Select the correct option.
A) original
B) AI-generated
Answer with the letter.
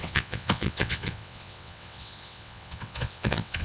B